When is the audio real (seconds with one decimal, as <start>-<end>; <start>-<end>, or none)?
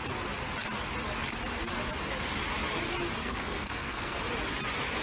0.0-3.2; 4.2-5.0